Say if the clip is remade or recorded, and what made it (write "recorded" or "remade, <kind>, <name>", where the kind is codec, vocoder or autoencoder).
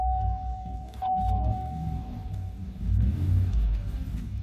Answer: remade, codec, DAC